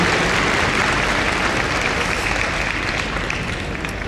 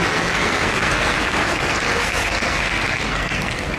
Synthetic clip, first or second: second